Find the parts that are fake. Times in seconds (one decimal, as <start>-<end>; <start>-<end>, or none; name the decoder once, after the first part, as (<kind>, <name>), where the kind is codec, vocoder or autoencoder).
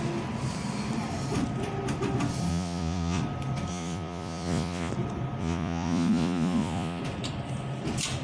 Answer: 2.5-3.2 (vocoder, Vocos); 3.7-4.9; 5.4-7.0